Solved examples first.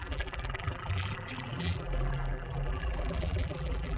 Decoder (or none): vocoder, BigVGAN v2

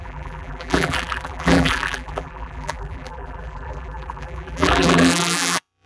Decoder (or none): vocoder, BigVGAN v2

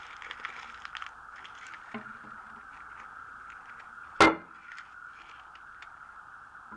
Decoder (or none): none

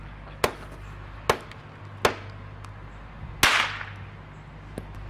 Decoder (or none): none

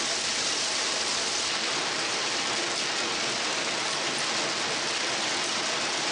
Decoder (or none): none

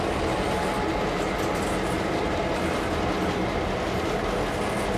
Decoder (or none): none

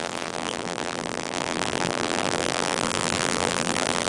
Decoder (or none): vocoder, BigVGAN v2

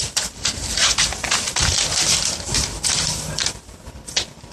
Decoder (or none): vocoder, BigVGAN v2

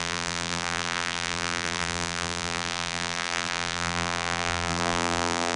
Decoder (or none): vocoder, BigVGAN v2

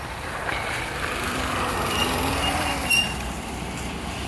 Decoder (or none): vocoder, BigVGAN v2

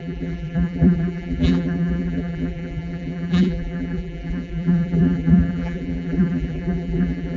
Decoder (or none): vocoder, BigVGAN v2